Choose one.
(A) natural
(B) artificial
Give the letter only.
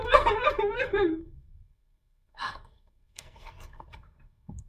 B